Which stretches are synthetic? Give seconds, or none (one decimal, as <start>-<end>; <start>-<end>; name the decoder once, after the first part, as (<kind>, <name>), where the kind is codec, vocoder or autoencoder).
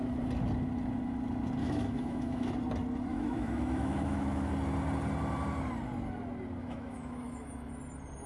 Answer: 1.6-2.5 (autoencoder, DAC-VAE); 3.1-4.5; 6.6-7.7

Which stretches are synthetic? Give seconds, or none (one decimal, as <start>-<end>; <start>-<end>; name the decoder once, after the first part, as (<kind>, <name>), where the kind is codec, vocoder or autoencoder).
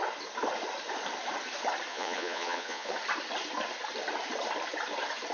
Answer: 1.9-2.9 (vocoder, Vocos)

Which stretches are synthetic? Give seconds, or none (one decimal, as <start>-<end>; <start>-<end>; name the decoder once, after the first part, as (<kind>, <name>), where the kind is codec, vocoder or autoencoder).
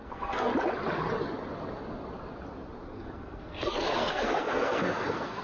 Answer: 0.0-0.5 (codec, SNAC); 2.9-5.4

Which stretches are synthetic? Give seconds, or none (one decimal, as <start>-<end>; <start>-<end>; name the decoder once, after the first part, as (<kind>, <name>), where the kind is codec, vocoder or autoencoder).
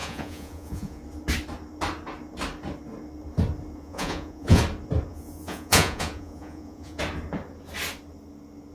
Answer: 0.0-1.0 (vocoder, Vocos); 3.8-4.6; 5.1-7.0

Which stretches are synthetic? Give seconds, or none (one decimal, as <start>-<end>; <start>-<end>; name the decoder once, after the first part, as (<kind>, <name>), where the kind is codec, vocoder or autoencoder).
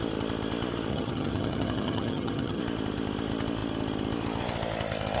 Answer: 0.9-2.6 (vocoder, HiFi-GAN)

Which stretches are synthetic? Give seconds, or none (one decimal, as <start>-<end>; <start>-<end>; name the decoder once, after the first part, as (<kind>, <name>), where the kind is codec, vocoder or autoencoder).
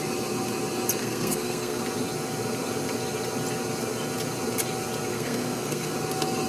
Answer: 1.0-1.8 (codec, SNAC); 5.1-5.9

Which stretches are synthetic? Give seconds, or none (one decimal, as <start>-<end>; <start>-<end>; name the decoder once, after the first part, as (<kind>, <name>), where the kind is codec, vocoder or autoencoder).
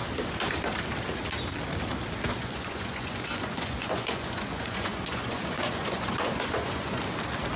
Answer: 2.4-7.0 (vocoder, Vocos)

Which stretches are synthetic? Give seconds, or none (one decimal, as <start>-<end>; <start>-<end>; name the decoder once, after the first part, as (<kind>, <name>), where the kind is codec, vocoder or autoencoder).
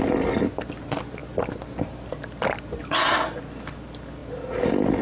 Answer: none